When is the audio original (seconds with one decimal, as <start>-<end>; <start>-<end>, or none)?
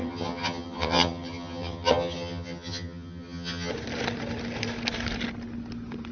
3.7-6.1